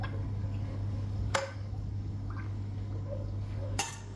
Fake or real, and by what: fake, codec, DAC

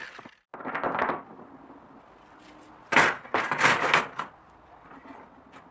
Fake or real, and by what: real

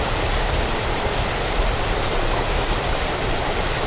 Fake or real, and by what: real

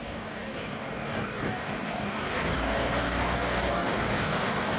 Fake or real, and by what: fake, codec, DAC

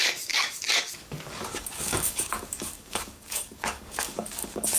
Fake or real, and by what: fake, codec, DAC